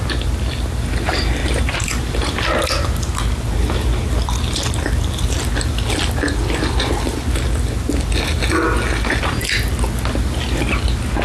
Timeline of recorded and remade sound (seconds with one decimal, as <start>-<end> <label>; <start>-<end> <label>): 0.0-1.4 recorded; 1.4-2.0 remade; 2.0-11.2 recorded